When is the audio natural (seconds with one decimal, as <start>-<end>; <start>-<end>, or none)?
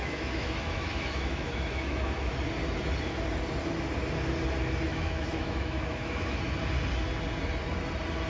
2.3-4.9; 6.4-8.3